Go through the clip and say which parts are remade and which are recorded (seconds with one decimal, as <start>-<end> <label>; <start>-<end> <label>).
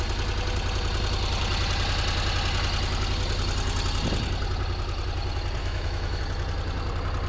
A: 0.0-5.6 recorded; 5.6-6.2 remade; 6.2-7.3 recorded